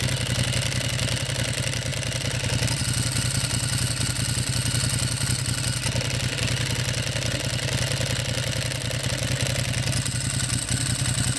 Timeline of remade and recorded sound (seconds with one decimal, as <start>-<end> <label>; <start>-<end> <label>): 0.0-1.9 recorded; 1.9-2.8 remade; 2.8-11.4 recorded